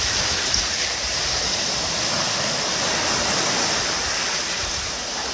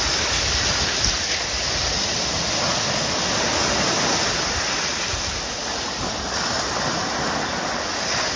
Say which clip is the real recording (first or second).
second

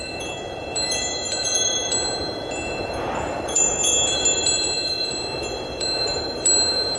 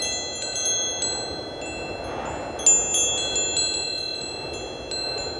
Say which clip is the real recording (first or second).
second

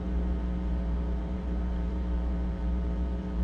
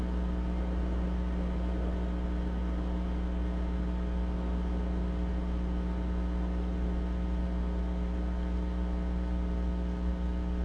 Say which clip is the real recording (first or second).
second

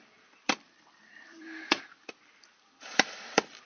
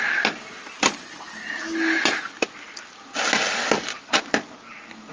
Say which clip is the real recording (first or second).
second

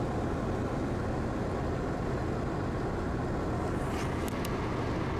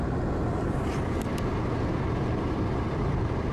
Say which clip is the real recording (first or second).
first